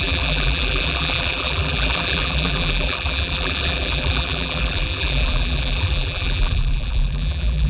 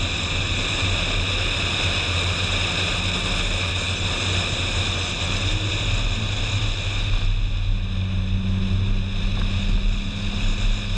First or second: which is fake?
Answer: first